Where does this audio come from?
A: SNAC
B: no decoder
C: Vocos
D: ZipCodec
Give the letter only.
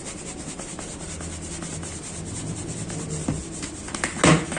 B